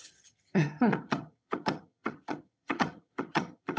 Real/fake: fake